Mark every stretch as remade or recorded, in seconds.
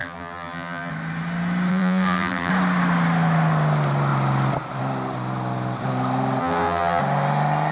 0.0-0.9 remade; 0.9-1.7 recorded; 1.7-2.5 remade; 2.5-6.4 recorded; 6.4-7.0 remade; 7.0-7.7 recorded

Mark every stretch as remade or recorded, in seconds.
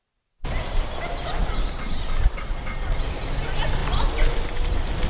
0.0-1.4 recorded; 1.4-3.4 remade; 3.4-3.8 recorded; 3.8-4.5 remade; 4.5-5.1 recorded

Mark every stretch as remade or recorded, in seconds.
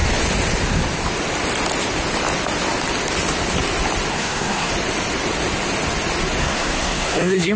0.0-4.1 recorded; 4.1-4.7 remade; 4.7-6.4 recorded; 6.4-7.6 remade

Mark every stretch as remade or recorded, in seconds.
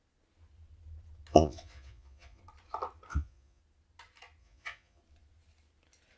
0.0-1.3 recorded; 1.3-2.4 remade; 2.4-3.1 recorded; 3.1-3.6 remade; 3.6-4.4 recorded; 4.4-5.0 remade; 5.0-6.2 recorded